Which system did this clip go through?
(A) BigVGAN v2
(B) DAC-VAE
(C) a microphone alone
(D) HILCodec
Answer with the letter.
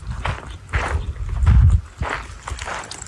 C